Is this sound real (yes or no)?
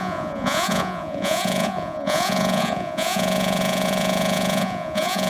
no